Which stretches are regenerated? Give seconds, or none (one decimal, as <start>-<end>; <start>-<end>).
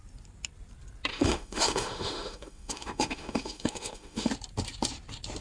1.1-4.3